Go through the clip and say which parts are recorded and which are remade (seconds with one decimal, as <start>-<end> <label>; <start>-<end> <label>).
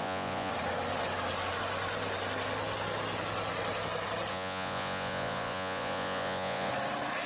0.0-0.5 remade; 0.5-4.3 recorded; 4.3-6.7 remade; 6.7-7.3 recorded